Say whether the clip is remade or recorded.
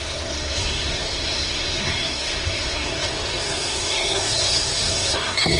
remade